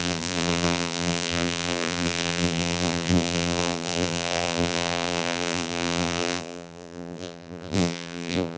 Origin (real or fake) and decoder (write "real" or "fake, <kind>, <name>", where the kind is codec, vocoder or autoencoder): fake, vocoder, BigVGAN v2